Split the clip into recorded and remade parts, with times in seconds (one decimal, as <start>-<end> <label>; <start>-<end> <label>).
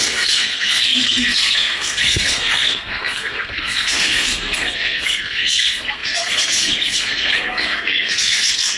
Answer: 0.0-8.8 remade